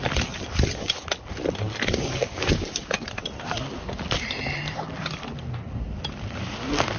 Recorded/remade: recorded